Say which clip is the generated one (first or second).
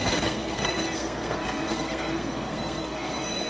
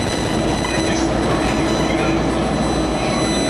first